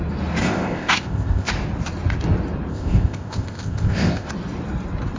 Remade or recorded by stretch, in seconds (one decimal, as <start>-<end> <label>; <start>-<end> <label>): 0.0-0.4 recorded; 0.4-1.5 remade; 1.5-2.7 recorded; 2.7-4.3 remade; 4.3-5.2 recorded